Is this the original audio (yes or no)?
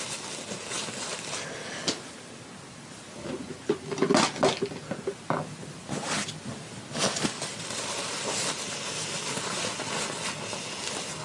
yes